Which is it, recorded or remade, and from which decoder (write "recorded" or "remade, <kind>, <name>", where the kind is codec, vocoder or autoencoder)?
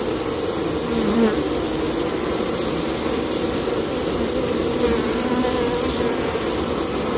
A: remade, vocoder, BigVGAN v2